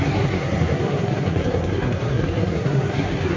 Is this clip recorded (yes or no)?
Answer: no